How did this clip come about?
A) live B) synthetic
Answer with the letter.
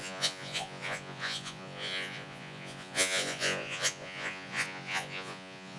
B